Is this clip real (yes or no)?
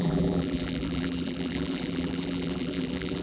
no